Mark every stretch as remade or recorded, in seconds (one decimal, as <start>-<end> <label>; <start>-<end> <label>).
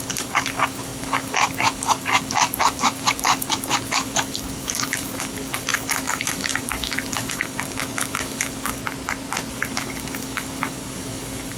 0.0-8.8 remade; 8.8-9.5 recorded; 9.5-11.6 remade